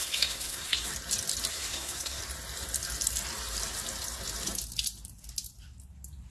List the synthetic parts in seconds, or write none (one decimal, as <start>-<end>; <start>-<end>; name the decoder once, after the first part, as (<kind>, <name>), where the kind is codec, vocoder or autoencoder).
0.0-0.9 (codec, SNAC); 1.5-2.2

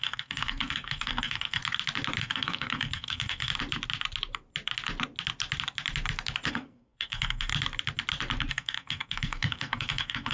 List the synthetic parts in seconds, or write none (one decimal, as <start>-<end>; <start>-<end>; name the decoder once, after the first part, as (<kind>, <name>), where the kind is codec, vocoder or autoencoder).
0.0-1.6 (codec, SNAC); 2.2-3.5; 6.5-7.5; 8.5-10.3